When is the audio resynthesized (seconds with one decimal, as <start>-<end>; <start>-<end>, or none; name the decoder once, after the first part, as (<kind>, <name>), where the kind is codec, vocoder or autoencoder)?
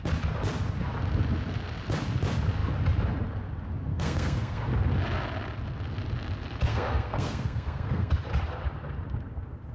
3.9-4.6 (codec, SNAC); 6.7-8.1